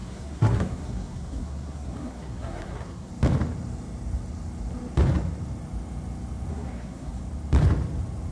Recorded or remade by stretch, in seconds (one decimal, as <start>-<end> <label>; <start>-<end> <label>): 0.0-3.1 remade; 3.1-6.5 recorded; 6.5-7.2 remade; 7.2-8.3 recorded